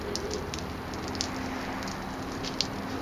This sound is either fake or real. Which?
real